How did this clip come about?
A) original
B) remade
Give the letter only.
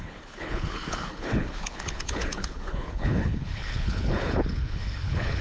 B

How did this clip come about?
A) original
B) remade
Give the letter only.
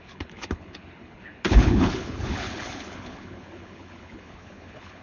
B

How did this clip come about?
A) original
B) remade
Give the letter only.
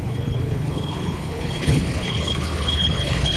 B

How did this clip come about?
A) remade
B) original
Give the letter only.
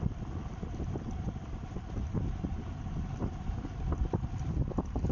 B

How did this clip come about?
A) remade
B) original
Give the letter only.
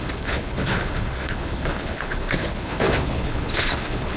A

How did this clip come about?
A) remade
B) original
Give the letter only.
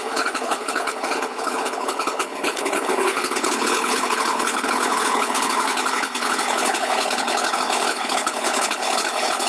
A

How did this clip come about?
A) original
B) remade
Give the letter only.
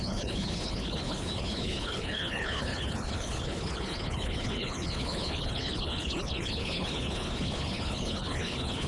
B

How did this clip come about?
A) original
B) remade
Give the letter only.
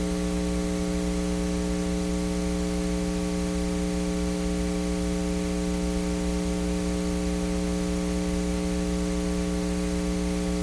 A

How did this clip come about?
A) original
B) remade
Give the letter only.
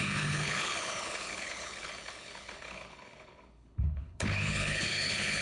B